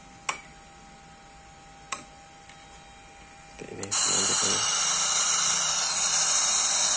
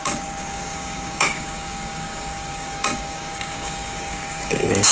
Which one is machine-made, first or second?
second